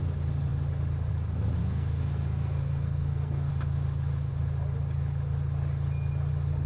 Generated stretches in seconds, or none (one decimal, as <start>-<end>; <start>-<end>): 1.6-3.5